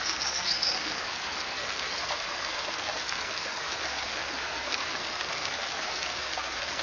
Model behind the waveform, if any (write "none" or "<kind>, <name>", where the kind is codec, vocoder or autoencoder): codec, SNAC